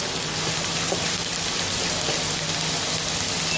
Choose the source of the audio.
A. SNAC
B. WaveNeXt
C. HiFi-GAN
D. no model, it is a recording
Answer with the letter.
D